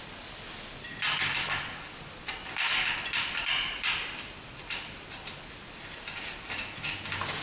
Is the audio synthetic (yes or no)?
no